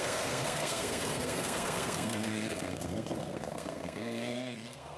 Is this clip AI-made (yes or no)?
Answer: yes